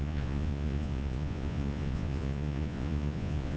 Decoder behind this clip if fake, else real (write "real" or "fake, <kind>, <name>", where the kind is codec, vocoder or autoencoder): fake, vocoder, Vocos